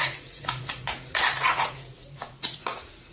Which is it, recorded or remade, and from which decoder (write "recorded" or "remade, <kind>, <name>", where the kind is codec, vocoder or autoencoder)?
remade, vocoder, Vocos